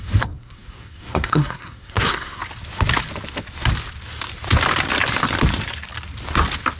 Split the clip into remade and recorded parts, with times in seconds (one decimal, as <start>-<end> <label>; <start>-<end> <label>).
0.0-2.4 remade; 2.4-6.8 recorded